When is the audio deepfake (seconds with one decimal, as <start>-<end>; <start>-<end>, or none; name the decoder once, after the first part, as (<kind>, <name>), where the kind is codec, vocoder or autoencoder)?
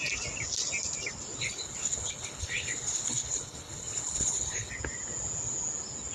1.4-4.7 (codec, HILCodec)